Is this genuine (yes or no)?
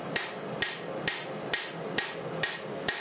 yes